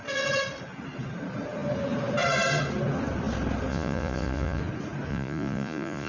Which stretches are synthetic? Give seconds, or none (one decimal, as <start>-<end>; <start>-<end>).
3.7-4.6; 5.1-6.1